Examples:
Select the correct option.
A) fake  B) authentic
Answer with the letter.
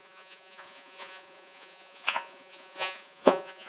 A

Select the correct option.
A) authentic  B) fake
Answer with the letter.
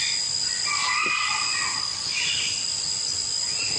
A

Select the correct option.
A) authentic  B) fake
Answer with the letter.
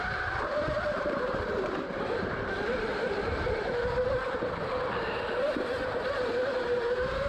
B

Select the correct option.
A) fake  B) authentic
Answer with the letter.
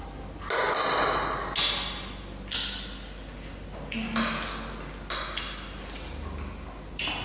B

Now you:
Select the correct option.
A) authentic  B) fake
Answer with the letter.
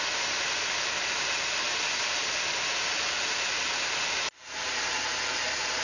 A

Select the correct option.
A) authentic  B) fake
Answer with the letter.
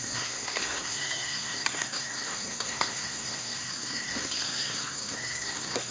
B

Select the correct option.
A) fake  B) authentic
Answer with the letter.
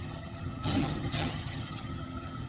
A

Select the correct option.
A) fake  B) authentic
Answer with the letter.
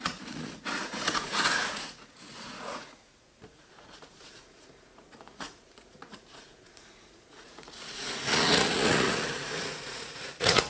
A